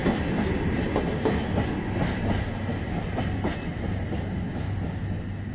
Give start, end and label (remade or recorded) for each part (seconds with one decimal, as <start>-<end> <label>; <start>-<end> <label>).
0.0-5.5 recorded